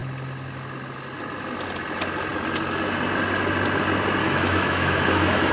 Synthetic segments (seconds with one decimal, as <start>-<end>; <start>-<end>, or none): 4.2-5.5